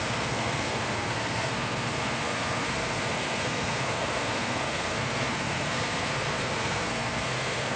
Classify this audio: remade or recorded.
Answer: remade